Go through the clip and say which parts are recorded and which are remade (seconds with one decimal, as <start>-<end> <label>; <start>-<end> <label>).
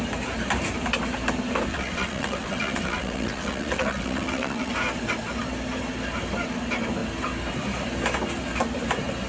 0.0-1.7 recorded; 1.7-4.7 remade; 4.7-9.3 recorded